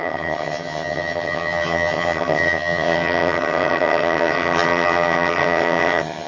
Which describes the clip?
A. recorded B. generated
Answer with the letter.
B